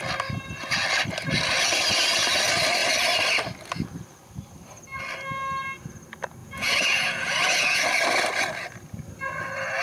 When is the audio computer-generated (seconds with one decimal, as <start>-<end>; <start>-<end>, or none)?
6.4-7.8